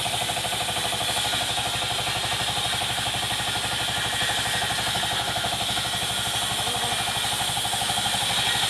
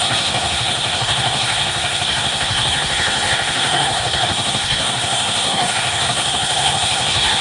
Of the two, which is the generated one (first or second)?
second